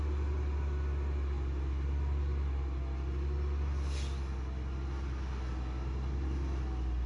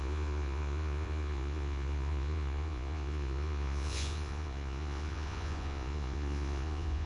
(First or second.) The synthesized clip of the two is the second